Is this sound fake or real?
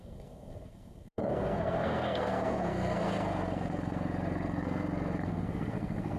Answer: fake